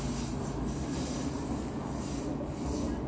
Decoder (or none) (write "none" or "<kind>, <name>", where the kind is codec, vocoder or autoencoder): none